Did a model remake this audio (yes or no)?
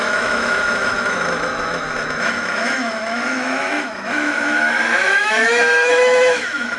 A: yes